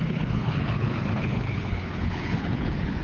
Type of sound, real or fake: fake